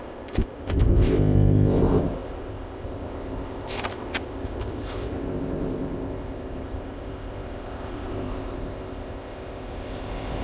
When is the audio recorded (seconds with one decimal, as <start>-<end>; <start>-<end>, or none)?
none